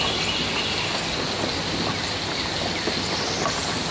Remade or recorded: recorded